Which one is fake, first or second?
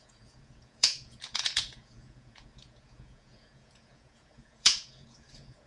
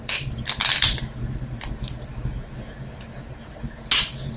first